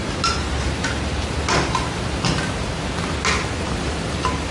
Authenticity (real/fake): real